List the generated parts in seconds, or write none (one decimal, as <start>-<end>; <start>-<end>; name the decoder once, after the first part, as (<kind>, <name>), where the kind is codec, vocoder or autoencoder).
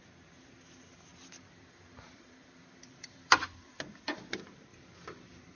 1.1-3.8 (vocoder, BigVGAN v2); 4.7-5.6